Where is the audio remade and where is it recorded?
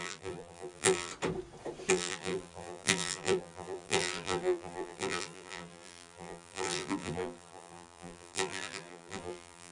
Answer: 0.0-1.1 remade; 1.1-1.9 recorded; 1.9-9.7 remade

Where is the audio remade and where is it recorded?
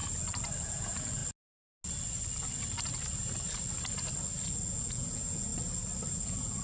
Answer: 0.0-0.6 recorded; 0.6-1.2 remade; 1.2-4.7 recorded; 4.7-5.5 remade; 5.5-6.1 recorded; 6.1-6.6 remade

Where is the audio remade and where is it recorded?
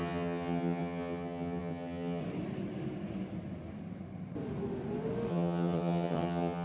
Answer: 0.0-2.2 remade; 2.2-5.3 recorded; 5.3-6.6 remade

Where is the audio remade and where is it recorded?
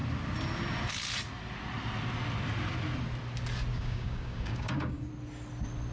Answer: 0.0-3.7 recorded; 3.7-5.1 remade; 5.1-5.9 recorded